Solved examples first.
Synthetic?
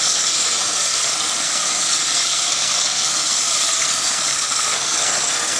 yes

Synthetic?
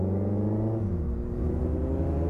no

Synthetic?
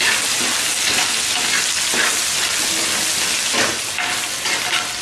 no